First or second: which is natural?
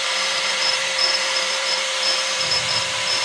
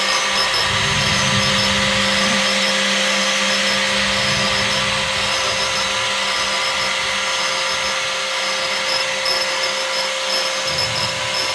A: second